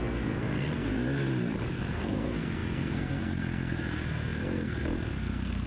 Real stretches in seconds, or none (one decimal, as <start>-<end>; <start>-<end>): 0.9-1.7